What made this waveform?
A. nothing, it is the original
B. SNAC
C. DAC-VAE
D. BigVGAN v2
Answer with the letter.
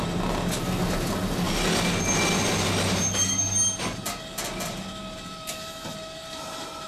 A